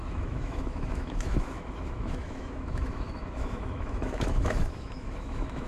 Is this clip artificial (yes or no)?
yes